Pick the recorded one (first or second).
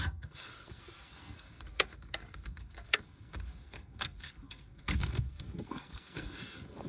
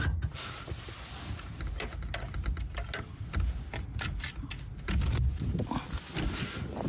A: second